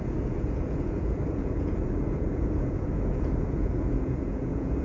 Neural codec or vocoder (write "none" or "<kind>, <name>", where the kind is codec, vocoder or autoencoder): vocoder, Vocos